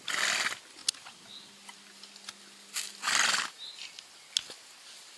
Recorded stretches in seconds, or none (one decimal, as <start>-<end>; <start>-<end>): 0.0-5.2